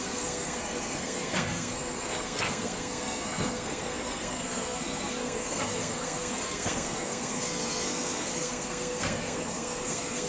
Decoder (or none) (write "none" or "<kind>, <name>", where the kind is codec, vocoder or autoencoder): codec, SNAC